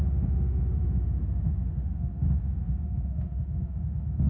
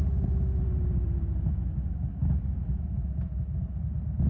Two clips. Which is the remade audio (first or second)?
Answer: first